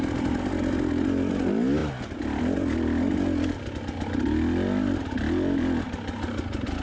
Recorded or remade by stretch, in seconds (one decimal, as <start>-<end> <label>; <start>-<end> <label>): 0.0-6.8 recorded